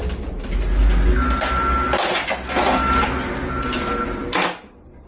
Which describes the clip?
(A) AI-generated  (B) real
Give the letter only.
B